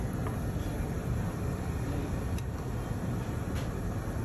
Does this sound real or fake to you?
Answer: real